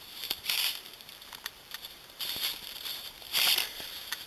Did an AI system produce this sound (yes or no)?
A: yes